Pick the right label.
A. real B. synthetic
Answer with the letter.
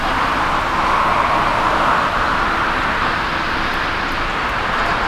B